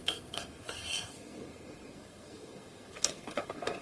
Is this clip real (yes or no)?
no